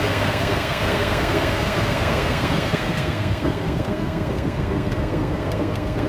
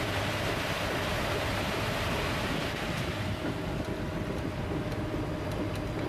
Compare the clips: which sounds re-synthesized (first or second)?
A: first